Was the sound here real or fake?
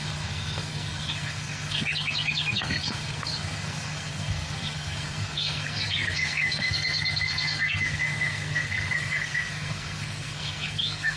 fake